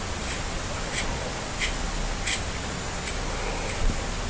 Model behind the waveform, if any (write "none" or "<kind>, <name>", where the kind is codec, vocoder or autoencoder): none